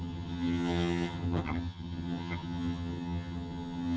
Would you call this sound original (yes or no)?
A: no